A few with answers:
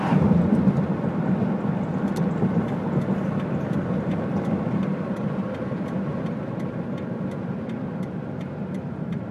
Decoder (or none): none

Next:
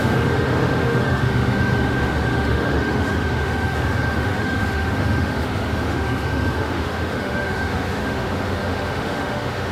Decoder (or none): autoencoder, DAC-VAE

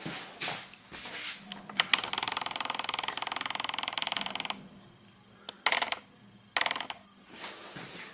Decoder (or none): none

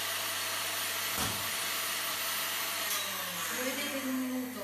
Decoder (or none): none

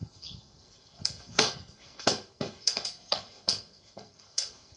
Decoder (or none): codec, SNAC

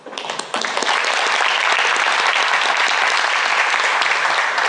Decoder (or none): none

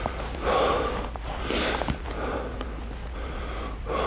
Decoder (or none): none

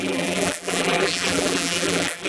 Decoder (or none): vocoder, BigVGAN v2